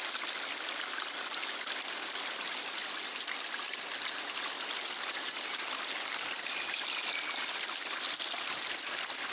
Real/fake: real